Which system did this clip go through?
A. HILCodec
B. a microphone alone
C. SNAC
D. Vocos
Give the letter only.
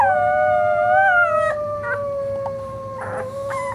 B